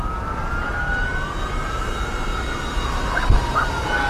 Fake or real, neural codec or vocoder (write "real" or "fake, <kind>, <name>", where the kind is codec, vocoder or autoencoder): real